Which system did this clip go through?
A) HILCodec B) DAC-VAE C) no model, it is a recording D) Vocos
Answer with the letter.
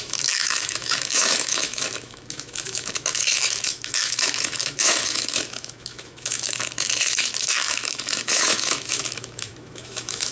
B